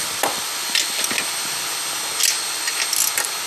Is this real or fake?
real